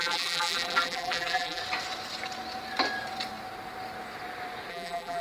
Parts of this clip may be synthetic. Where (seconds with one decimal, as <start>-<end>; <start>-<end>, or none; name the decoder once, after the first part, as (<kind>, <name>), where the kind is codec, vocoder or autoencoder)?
0.0-1.6 (vocoder, BigVGAN v2); 4.7-5.2